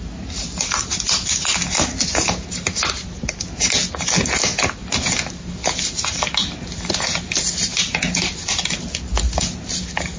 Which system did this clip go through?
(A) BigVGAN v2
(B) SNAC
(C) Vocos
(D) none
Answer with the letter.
D